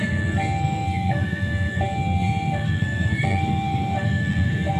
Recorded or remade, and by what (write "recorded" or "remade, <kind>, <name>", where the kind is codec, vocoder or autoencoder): remade, codec, SNAC